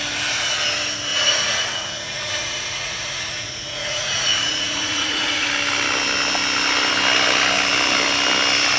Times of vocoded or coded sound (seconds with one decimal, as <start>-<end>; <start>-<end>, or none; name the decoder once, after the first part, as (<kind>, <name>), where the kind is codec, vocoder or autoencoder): 1.1-5.5 (vocoder, Vocos)